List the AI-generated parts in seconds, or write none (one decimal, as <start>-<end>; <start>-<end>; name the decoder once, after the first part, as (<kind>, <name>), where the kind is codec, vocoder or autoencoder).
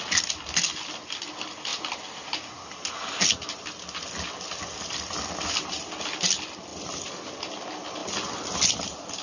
6.7-7.3 (vocoder, BigVGAN v2)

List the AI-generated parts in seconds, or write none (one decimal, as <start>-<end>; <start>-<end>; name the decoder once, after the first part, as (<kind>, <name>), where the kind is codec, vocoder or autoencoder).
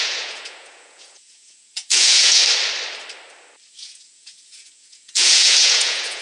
0.0-2.4 (vocoder, Vocos); 3.7-6.2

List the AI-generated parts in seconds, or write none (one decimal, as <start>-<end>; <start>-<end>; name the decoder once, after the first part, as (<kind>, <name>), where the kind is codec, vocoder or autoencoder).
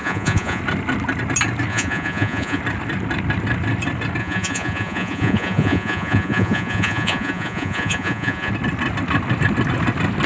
0.0-0.6 (vocoder, Vocos); 1.7-2.6; 4.2-8.5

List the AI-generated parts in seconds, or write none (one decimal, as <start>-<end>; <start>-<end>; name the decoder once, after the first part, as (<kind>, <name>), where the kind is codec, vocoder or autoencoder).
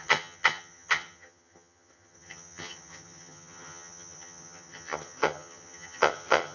0.0-6.5 (vocoder, HiFi-GAN)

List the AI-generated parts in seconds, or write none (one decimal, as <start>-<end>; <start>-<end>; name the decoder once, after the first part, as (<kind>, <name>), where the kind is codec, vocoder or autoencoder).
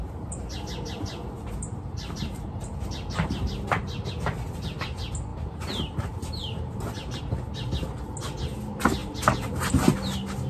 0.0-4.1 (vocoder, BigVGAN v2); 5.3-7.2; 9.0-9.7